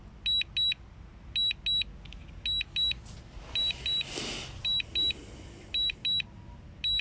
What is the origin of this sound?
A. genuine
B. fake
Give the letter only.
A